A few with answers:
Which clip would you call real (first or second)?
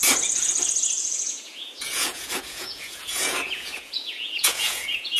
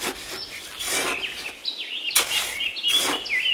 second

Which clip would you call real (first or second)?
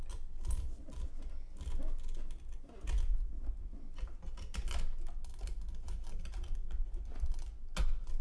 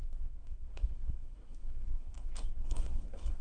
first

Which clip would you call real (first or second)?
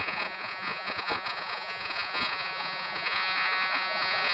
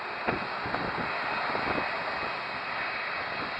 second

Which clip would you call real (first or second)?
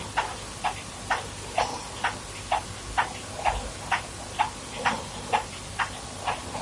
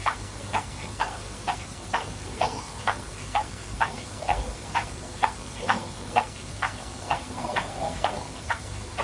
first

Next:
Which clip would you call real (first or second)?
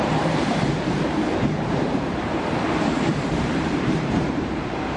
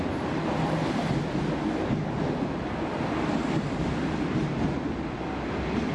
second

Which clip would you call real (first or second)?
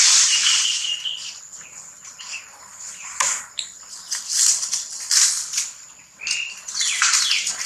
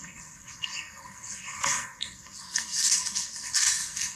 first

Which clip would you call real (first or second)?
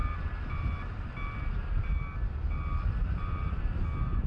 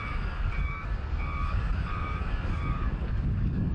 first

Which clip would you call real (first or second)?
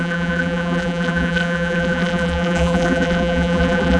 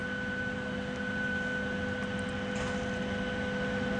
second